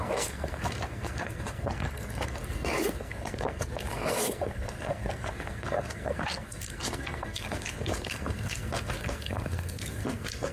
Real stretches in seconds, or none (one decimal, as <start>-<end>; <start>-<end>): none